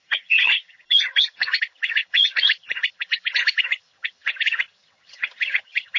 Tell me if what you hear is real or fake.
fake